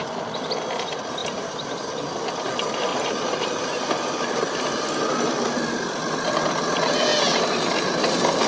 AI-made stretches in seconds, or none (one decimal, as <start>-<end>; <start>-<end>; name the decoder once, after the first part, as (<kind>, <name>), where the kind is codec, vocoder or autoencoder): 1.2-2.1 (vocoder, BigVGAN v2); 2.9-4.5